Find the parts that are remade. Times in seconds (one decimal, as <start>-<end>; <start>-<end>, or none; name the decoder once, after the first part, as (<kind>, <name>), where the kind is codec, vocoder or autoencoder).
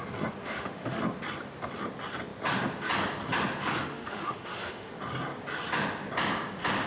0.4-1.0 (autoencoder, DAC-VAE); 3.8-4.9